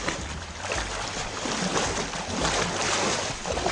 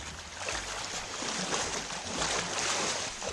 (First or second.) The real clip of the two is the first